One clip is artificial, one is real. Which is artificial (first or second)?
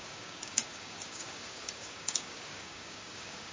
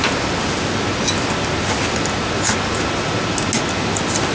first